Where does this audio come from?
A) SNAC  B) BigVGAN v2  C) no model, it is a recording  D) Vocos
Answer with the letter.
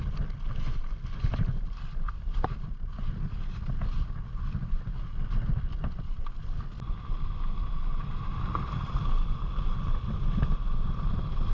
C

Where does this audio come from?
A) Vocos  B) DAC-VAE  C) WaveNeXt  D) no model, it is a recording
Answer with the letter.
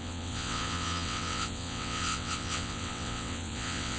C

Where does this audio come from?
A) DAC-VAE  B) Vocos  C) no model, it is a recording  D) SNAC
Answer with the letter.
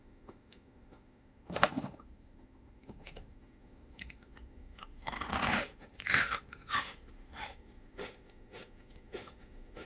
A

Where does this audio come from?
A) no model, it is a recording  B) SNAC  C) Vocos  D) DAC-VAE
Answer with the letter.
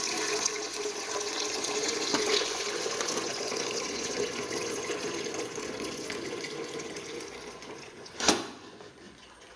C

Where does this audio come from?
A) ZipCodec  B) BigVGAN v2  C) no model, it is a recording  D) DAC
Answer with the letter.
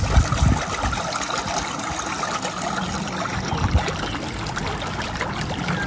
C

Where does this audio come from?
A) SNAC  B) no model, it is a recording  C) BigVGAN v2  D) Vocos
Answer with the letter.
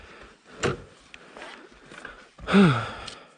B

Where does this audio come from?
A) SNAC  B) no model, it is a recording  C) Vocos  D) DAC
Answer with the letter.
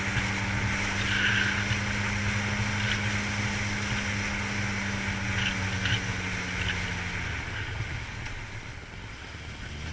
B